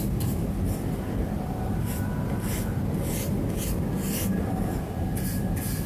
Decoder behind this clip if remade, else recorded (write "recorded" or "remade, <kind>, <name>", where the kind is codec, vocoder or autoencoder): recorded